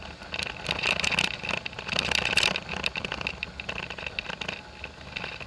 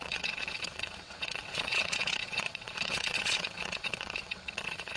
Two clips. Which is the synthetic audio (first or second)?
second